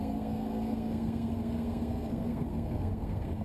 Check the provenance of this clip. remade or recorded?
remade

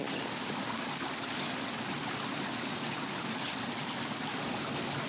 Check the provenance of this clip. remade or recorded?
recorded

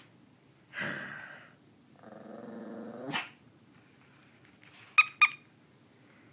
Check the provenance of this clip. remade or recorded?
recorded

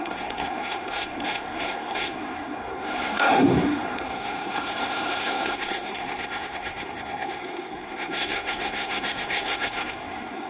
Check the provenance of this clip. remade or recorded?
remade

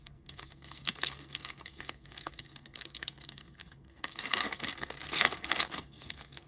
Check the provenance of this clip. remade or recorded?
remade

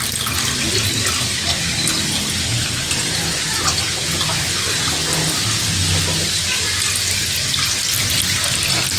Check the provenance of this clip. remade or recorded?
recorded